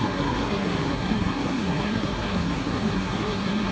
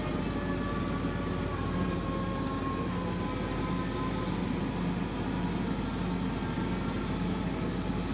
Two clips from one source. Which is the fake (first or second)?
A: first